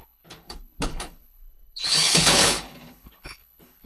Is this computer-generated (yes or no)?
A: yes